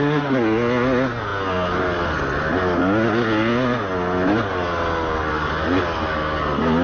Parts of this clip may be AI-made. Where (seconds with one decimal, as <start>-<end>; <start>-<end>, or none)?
none